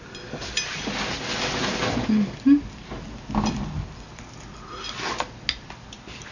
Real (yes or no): yes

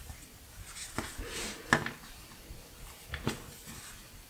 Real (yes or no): yes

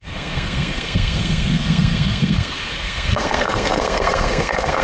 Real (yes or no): no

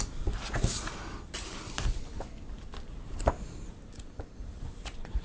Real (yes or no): yes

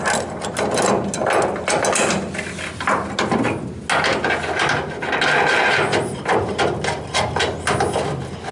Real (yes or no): yes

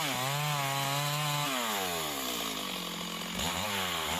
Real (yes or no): yes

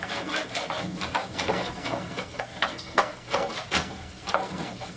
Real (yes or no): no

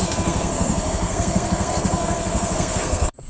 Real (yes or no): no